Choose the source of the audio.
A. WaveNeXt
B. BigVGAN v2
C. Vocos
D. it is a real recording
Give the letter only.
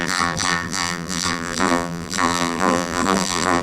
B